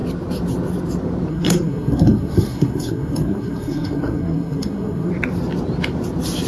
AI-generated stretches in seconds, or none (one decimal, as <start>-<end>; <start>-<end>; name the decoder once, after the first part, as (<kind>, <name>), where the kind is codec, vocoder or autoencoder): 1.3-5.1 (codec, SNAC)